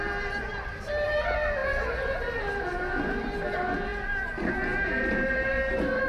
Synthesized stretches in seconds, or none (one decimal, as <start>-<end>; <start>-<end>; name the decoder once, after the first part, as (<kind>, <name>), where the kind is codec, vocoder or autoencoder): none